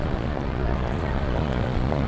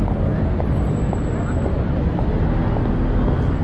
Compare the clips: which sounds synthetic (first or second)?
first